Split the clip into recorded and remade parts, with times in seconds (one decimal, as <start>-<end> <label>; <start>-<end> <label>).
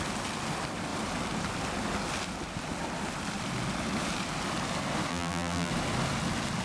0.0-5.1 recorded; 5.1-5.7 remade; 5.7-6.6 recorded